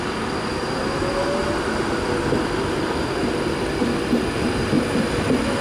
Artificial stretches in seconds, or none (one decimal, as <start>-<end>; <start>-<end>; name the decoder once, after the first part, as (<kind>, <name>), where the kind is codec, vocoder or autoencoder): none